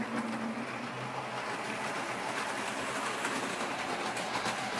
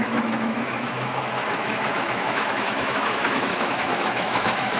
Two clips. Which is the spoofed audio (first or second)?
second